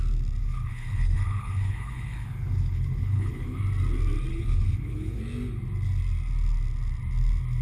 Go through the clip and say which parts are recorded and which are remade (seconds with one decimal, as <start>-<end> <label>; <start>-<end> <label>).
0.0-0.4 recorded; 0.4-3.6 remade; 3.6-4.3 recorded; 4.3-5.2 remade; 5.2-7.6 recorded